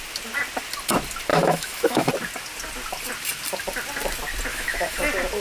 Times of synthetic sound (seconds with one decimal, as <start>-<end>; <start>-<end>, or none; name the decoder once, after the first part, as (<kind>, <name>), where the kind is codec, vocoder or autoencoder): 1.3-2.1 (autoencoder, DAC-VAE); 4.5-5.0